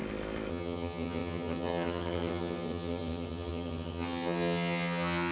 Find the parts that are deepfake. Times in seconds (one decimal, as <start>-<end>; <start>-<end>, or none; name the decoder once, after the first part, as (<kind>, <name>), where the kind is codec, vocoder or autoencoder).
0.5-5.3 (vocoder, HiFi-GAN)